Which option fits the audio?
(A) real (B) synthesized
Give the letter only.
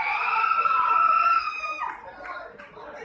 B